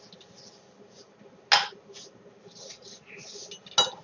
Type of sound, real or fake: real